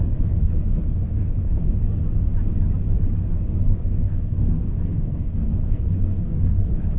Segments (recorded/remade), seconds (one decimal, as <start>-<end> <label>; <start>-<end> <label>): 0.0-2.0 remade; 2.0-3.6 recorded; 3.6-7.0 remade